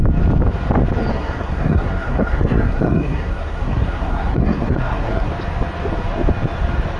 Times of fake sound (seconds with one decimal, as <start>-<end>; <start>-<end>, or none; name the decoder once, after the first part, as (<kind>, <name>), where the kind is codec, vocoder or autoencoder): 1.1-5.3 (codec, SNAC)